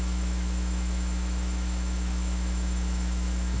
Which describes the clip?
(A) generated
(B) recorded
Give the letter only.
A